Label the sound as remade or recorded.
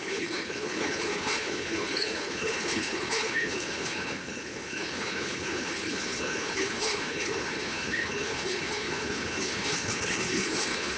remade